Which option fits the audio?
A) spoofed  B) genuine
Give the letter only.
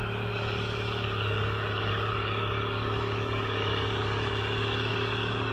A